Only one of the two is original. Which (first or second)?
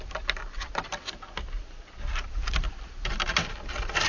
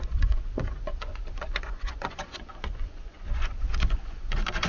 first